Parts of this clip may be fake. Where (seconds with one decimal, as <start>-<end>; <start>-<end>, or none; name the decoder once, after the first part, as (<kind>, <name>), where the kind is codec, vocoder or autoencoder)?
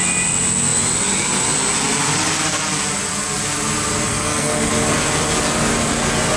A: 4.1-4.7 (codec, SNAC)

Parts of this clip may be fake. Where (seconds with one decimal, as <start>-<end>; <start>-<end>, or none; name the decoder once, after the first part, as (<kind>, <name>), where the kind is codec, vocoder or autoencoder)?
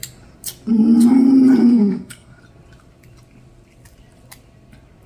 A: 1.6-2.4 (codec, SNAC)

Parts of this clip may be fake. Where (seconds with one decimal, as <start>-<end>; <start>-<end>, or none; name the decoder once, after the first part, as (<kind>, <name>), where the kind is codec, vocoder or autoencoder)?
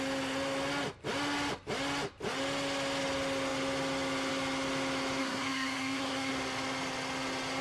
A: 5.2-6.3 (codec, SNAC)